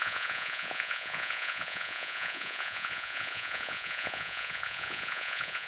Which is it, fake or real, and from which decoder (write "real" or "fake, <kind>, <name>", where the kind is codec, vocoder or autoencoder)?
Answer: fake, vocoder, Vocos